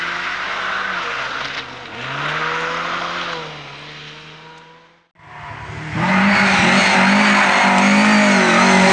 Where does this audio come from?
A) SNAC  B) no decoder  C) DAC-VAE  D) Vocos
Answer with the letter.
B